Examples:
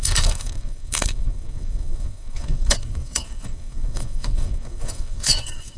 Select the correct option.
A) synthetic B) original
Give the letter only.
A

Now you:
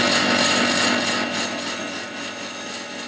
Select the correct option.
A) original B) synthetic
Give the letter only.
A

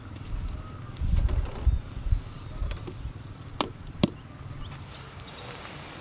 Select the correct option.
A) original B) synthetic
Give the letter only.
A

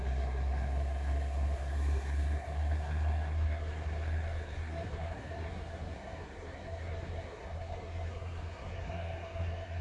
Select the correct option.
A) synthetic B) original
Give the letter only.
A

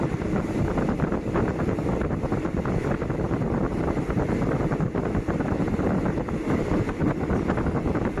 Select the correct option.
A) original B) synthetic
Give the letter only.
A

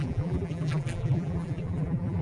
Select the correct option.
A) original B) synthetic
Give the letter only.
B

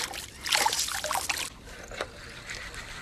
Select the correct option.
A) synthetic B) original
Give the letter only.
B